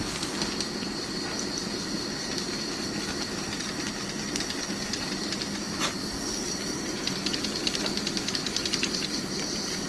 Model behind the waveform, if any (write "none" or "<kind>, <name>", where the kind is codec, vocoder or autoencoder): none